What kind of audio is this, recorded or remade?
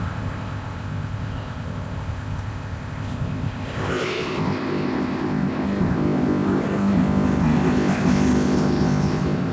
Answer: remade